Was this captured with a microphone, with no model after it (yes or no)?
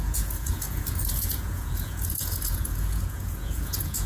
no